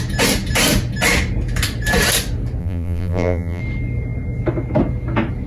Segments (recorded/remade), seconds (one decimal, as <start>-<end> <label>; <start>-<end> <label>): 0.0-2.6 recorded; 2.6-3.6 remade; 3.6-5.5 recorded

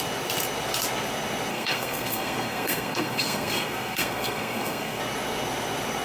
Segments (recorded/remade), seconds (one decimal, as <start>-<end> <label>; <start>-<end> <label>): 0.0-1.5 recorded; 1.5-5.0 remade; 5.0-6.0 recorded

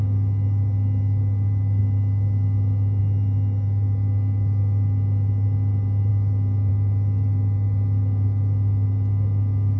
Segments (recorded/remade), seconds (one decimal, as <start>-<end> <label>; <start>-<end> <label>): 0.0-9.8 recorded

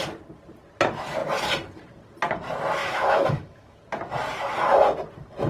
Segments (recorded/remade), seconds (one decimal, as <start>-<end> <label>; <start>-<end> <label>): 0.0-2.8 recorded; 2.8-3.8 remade; 3.8-5.5 recorded

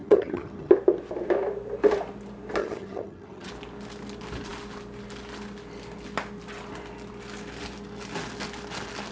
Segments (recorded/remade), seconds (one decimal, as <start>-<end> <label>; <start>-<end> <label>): 0.0-0.7 remade; 0.7-2.6 recorded; 2.6-3.5 remade; 3.5-9.1 recorded

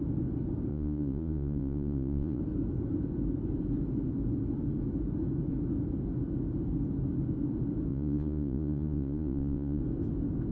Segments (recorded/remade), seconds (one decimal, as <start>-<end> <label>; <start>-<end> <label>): 0.0-0.7 recorded; 0.7-2.4 remade; 2.4-7.9 recorded; 7.9-9.8 remade; 9.8-10.5 recorded

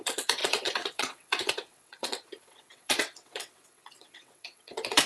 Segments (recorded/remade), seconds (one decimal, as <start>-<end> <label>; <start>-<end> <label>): 0.0-5.1 remade